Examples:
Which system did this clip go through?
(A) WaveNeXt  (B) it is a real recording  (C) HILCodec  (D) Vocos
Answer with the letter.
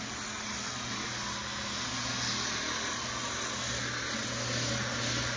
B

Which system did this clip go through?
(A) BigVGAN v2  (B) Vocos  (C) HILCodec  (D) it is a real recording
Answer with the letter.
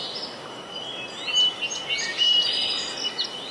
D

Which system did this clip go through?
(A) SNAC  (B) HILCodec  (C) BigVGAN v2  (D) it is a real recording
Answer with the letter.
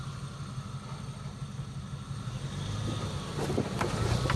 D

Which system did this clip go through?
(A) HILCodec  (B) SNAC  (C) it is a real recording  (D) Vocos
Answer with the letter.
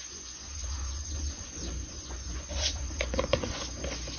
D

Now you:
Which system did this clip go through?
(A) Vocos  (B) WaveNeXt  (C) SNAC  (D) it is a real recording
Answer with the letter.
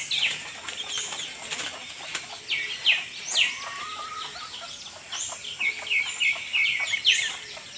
D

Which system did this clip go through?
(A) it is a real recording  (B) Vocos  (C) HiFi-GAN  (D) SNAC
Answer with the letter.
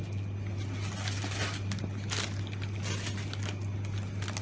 A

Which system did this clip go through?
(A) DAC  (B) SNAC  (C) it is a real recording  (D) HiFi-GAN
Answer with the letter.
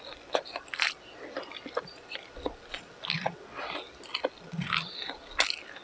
C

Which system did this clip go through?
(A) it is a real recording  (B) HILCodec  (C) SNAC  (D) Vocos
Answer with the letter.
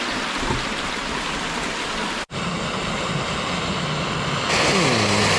A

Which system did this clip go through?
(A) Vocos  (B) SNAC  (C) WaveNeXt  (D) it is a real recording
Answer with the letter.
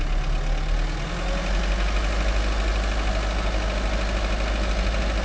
D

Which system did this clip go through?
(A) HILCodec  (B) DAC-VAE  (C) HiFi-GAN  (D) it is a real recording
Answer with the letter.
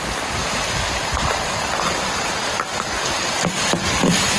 D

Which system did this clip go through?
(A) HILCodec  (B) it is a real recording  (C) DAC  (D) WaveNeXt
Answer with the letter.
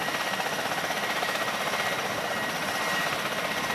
B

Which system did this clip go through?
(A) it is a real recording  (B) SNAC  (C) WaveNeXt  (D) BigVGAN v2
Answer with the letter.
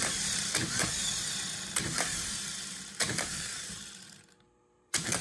D